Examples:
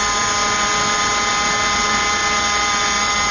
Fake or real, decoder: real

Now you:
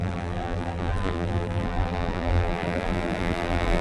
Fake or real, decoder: fake, vocoder, BigVGAN v2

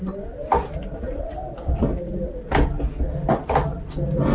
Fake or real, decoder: real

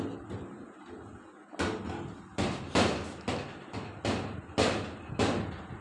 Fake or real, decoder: real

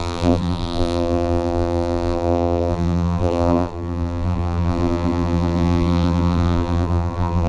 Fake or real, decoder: fake, vocoder, BigVGAN v2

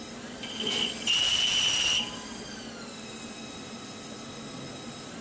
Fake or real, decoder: real